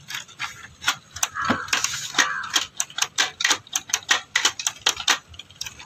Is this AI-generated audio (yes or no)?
no